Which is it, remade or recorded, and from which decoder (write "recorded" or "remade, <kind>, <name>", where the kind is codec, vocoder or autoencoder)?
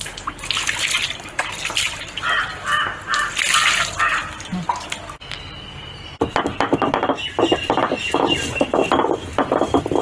recorded